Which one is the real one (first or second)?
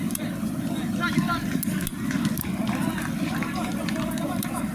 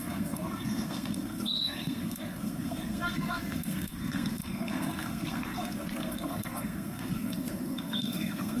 first